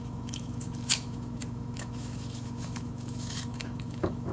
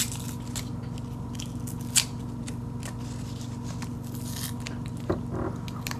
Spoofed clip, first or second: first